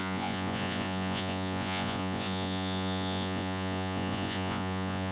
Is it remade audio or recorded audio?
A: remade